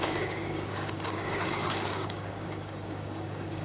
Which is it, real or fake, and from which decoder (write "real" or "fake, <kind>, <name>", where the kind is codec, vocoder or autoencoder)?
fake, codec, DAC